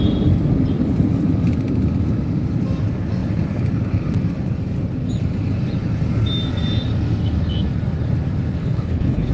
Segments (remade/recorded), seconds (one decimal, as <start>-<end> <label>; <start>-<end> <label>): 0.0-8.6 recorded; 8.6-9.3 remade